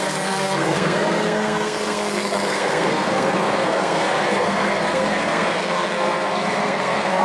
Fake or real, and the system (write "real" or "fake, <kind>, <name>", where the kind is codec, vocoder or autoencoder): fake, codec, SNAC